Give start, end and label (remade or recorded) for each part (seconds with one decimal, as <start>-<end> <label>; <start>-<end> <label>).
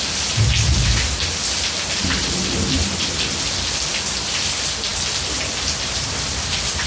0.0-6.9 recorded